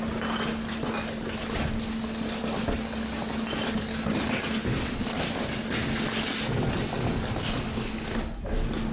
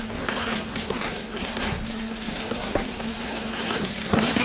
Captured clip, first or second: first